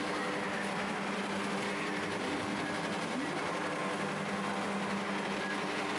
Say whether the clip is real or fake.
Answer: real